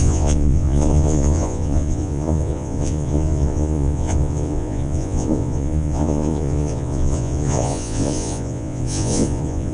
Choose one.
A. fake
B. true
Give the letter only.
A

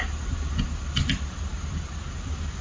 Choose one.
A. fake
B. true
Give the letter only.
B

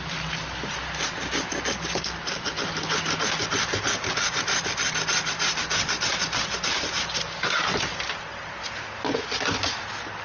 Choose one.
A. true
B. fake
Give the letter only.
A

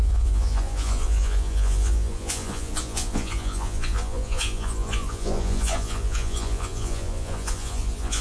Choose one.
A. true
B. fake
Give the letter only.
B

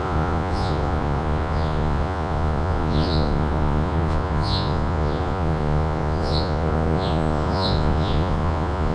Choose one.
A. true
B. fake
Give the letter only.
B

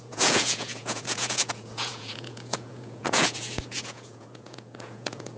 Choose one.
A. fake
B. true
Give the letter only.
A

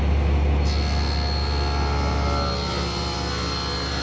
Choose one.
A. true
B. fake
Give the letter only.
A